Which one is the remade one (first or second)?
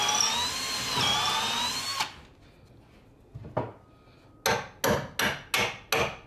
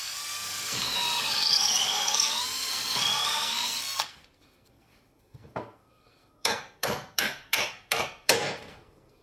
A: second